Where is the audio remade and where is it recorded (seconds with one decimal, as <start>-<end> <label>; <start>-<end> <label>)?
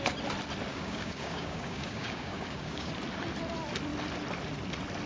0.0-0.7 recorded; 0.7-2.9 remade; 2.9-5.1 recorded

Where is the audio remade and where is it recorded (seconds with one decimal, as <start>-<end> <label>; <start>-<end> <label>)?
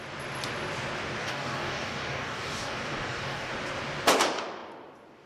0.0-1.2 recorded; 1.2-3.5 remade; 3.5-5.3 recorded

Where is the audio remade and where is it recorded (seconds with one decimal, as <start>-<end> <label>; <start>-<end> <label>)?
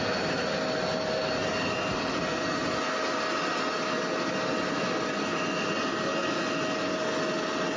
0.0-7.8 recorded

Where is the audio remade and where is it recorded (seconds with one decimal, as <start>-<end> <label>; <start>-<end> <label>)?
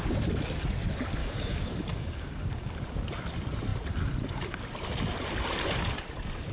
0.0-1.2 recorded; 1.2-2.7 remade; 2.7-6.5 recorded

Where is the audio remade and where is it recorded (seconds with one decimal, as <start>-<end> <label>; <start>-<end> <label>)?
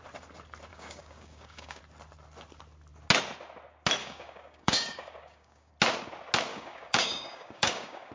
0.0-0.7 recorded; 0.7-1.8 remade; 1.8-4.0 recorded; 4.0-5.7 remade; 5.7-6.5 recorded; 6.5-8.1 remade